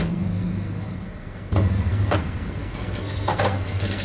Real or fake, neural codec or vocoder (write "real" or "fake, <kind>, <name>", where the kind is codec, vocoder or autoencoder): fake, codec, SNAC